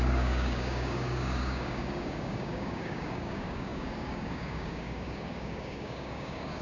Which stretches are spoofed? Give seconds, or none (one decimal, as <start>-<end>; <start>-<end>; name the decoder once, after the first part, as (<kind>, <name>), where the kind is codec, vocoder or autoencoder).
0.0-6.6 (codec, DAC)